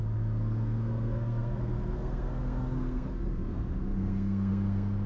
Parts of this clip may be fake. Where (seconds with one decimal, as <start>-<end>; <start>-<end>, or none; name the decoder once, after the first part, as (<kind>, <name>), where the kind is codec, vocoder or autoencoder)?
0.0-5.1 (codec, SNAC)